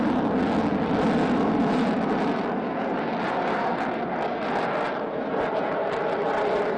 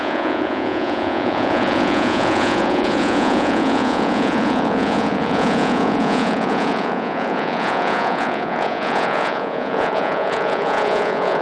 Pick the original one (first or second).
first